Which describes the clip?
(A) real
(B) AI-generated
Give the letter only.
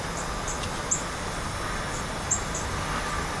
A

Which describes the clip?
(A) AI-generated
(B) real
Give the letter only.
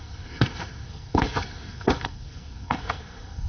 A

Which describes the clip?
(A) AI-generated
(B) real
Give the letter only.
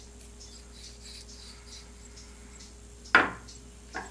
B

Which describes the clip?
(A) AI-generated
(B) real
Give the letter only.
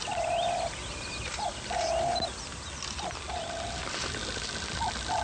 B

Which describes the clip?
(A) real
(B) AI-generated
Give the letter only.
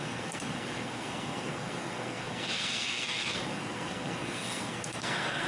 B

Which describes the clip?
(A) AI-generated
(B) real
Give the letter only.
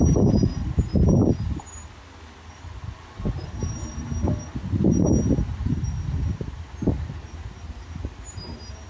B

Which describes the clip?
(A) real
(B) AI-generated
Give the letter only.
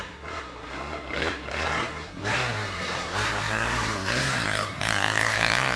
B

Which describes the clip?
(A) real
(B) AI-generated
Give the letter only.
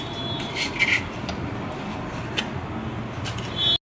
A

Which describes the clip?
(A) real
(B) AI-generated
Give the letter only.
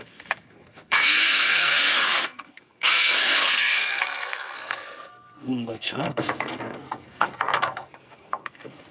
B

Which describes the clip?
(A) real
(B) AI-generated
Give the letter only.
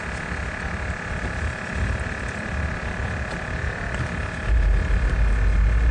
A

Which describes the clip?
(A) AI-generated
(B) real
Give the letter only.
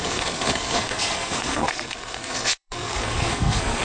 A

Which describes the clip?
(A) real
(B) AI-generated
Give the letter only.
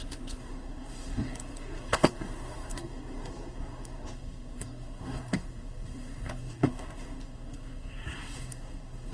B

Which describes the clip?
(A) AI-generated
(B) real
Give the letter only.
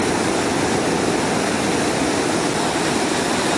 B